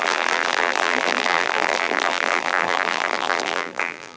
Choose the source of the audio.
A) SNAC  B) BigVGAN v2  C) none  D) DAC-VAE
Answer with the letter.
B